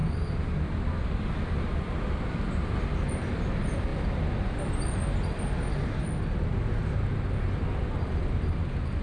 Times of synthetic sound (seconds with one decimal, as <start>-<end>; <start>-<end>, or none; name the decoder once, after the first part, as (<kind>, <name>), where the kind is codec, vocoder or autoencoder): none